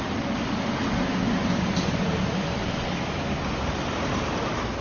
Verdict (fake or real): real